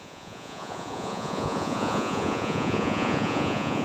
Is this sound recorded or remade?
remade